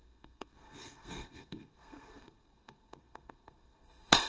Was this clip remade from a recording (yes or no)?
yes